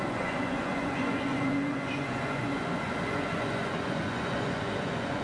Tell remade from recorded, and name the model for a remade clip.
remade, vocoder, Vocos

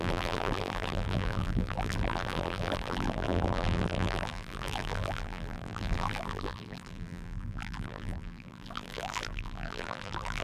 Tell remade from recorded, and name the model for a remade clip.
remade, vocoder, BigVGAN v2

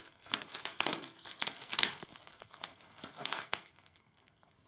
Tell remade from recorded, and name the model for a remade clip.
remade, codec, SNAC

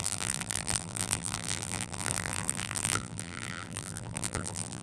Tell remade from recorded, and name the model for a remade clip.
remade, vocoder, BigVGAN v2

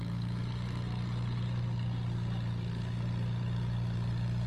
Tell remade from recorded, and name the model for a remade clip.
recorded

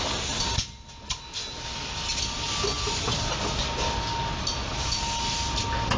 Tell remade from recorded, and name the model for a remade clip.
recorded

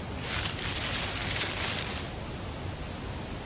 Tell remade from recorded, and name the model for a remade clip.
recorded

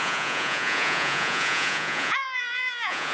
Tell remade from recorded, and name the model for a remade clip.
remade, vocoder, Vocos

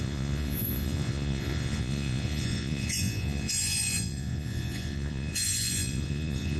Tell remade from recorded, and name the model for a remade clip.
remade, vocoder, Vocos